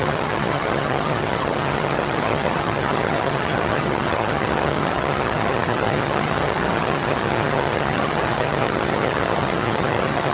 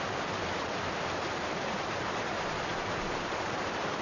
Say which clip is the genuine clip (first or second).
second